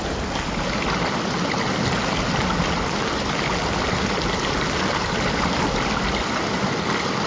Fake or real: real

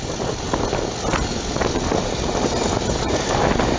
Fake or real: real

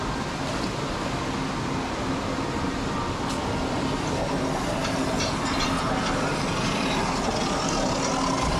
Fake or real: real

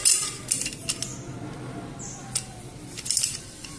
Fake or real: real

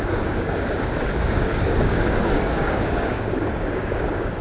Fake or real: fake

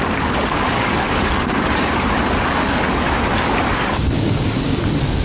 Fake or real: fake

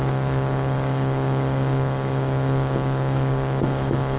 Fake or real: fake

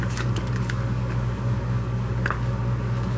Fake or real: fake